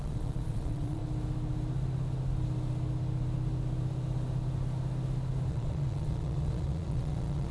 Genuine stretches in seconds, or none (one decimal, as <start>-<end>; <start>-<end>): 1.0-5.5